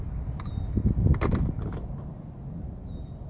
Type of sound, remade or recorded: recorded